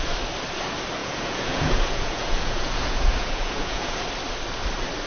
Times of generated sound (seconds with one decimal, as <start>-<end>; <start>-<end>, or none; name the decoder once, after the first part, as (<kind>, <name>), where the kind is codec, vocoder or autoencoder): 1.0-4.0 (vocoder, Vocos)